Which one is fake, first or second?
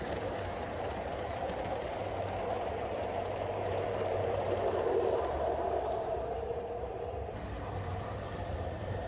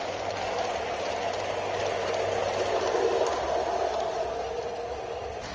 first